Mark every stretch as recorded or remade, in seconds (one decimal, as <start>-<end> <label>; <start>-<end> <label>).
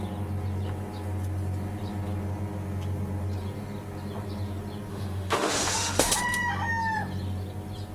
0.0-4.9 recorded; 4.9-6.1 remade; 6.1-7.9 recorded